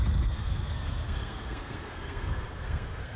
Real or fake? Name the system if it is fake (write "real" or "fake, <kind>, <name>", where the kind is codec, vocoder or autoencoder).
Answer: fake, codec, SNAC